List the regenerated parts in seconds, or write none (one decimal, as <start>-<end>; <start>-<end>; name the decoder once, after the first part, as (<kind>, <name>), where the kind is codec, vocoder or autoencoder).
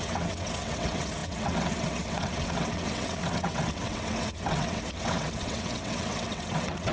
0.0-6.9 (vocoder, WaveNeXt)